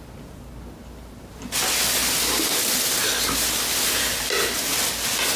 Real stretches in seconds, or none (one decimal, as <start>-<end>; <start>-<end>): 0.0-5.4